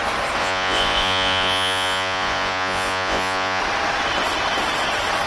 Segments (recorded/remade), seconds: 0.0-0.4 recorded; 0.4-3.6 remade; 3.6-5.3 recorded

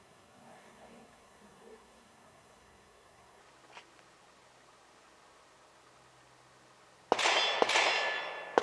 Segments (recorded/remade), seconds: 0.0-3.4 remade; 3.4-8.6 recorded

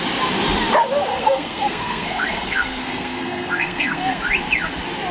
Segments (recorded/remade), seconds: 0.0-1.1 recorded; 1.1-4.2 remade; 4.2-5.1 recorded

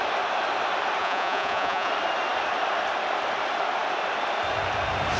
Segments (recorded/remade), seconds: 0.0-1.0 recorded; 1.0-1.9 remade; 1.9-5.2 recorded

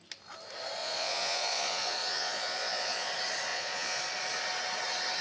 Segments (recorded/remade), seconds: 0.0-0.8 recorded; 0.8-3.1 remade; 3.1-3.5 recorded; 3.5-4.0 remade; 4.0-5.2 recorded

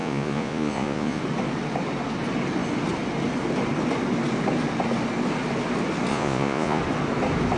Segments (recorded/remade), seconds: 0.0-1.2 remade; 1.2-6.1 recorded; 6.1-6.8 remade; 6.8-7.6 recorded

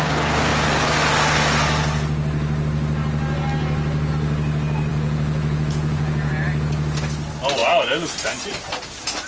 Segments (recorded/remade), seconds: 0.0-4.9 recorded; 4.9-6.3 remade; 6.3-9.3 recorded

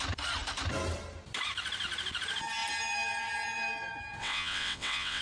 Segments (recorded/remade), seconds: 0.0-4.2 recorded; 4.2-5.2 remade